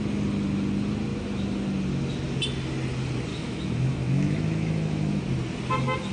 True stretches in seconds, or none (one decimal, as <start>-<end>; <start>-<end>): 0.0-3.3; 5.2-6.1